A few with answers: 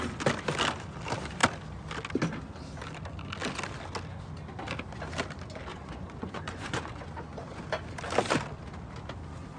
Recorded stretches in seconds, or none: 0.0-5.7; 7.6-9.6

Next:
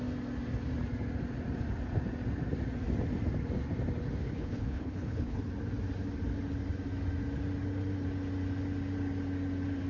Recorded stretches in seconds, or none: 0.0-4.2; 5.4-9.9

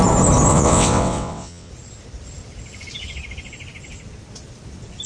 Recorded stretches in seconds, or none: 0.0-0.5; 1.7-5.1

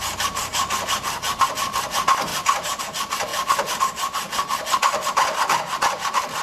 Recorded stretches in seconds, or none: 0.0-2.3; 2.8-6.4

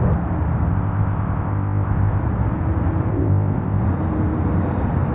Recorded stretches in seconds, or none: 0.0-0.7; 2.2-3.1; 3.8-5.1